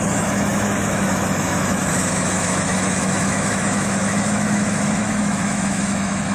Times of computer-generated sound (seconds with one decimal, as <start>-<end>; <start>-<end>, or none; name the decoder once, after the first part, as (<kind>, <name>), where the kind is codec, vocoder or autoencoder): 0.0-6.3 (autoencoder, DAC-VAE)